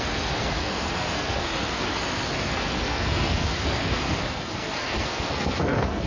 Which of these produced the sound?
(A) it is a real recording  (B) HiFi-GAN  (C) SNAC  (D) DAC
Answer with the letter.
C